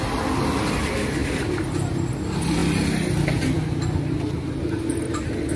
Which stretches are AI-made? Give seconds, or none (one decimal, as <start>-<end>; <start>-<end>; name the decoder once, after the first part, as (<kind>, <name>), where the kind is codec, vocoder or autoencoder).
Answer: none